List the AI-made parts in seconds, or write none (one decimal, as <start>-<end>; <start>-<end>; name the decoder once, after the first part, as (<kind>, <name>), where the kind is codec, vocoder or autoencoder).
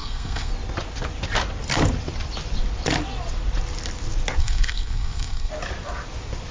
0.0-0.5 (codec, SNAC); 4.4-5.5